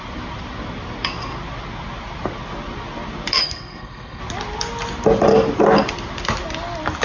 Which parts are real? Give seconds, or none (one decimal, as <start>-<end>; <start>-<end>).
0.0-3.4; 4.2-7.0